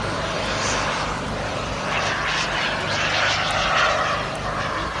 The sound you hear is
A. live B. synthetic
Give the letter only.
A